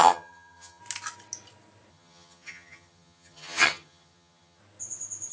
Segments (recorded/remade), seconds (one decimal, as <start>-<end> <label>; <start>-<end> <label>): 0.0-0.8 remade; 0.8-1.9 recorded; 1.9-4.6 remade; 4.6-5.3 recorded